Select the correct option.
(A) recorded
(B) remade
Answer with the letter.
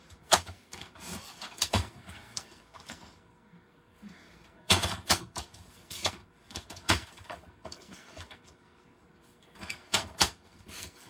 B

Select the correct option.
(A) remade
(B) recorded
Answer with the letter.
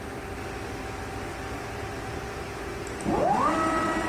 B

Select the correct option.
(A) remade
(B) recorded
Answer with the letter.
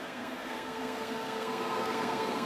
A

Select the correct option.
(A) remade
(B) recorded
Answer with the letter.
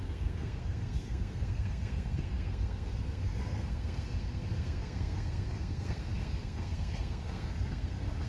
A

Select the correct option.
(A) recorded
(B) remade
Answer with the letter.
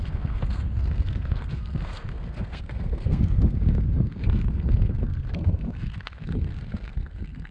B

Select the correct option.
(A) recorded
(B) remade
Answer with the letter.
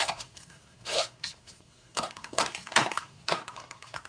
B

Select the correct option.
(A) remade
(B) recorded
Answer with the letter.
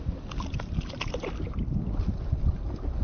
B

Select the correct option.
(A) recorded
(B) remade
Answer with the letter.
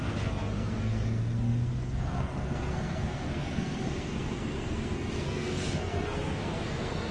B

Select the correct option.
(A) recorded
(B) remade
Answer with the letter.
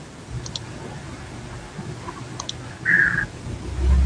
A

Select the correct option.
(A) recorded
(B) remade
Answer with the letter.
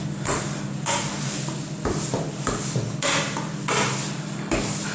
A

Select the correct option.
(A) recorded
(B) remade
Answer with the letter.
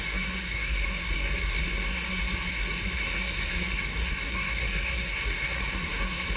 B